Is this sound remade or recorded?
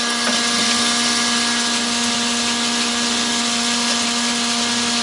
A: recorded